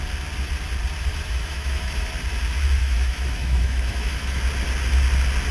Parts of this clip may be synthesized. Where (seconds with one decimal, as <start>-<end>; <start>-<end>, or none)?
1.1-2.1; 2.8-4.4

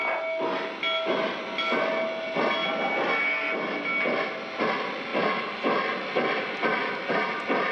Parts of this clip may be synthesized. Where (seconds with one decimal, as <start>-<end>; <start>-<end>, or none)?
none

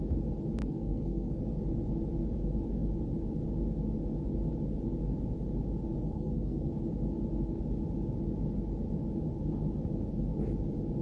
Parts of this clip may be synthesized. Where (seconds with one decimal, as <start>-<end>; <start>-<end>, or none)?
0.6-1.4; 6.0-6.7

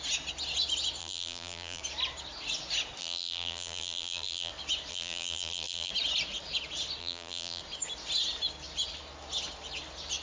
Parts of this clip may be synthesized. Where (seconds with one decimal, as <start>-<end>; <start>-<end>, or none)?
1.0-1.8; 3.0-4.5; 4.9-5.9; 7.0-7.6

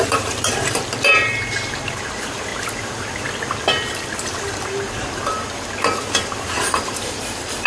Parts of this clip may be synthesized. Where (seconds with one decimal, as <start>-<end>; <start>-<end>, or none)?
0.0-2.5; 6.5-7.7